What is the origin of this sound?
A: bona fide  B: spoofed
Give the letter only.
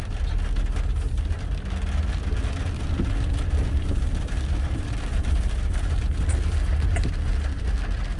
A